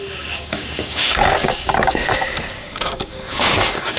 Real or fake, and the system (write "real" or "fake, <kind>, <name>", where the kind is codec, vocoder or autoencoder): fake, codec, DAC